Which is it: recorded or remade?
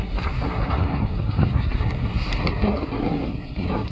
remade